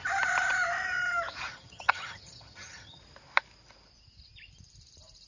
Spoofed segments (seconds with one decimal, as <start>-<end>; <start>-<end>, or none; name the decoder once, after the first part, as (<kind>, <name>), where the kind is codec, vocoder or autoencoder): 1.5-3.0 (vocoder, HiFi-GAN)